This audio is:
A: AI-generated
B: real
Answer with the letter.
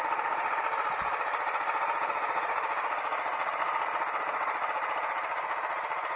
B